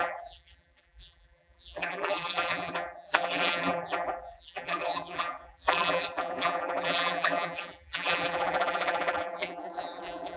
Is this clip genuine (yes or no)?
no